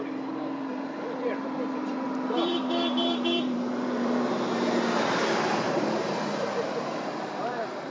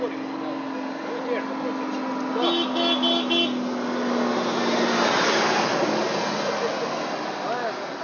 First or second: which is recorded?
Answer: second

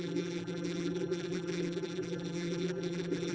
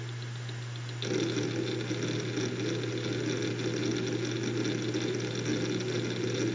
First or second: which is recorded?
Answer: second